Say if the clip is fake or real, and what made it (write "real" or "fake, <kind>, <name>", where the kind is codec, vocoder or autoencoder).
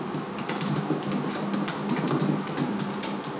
real